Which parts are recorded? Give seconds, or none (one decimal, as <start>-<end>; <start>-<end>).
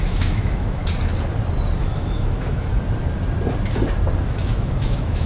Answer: 0.8-1.8; 2.7-4.3